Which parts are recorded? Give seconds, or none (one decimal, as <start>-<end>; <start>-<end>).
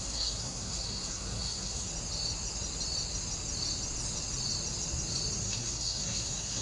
1.9-5.4